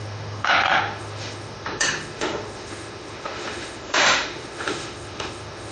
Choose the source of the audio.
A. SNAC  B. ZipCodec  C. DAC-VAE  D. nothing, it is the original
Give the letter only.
C